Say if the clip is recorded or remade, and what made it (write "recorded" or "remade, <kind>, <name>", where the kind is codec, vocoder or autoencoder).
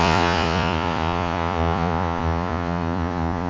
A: remade, vocoder, Vocos